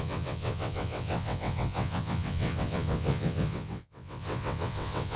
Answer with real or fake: fake